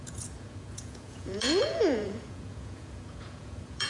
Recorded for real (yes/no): no